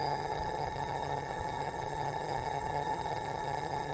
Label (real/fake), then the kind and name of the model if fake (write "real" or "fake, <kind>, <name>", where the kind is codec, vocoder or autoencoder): fake, vocoder, HiFi-GAN